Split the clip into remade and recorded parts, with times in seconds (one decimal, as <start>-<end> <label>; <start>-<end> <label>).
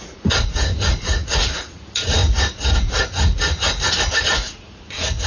0.0-5.3 remade